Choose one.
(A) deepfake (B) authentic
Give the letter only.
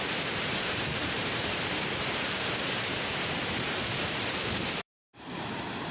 A